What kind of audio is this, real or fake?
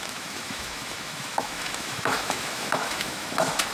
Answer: fake